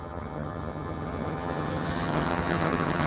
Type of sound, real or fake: fake